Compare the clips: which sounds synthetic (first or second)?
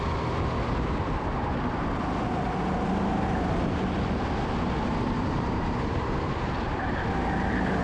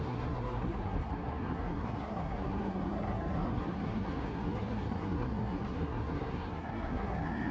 second